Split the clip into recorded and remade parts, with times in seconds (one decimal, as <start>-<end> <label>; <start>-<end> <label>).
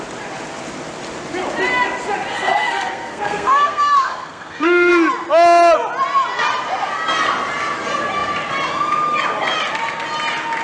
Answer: 0.0-2.3 recorded; 2.3-4.9 remade; 4.9-10.6 recorded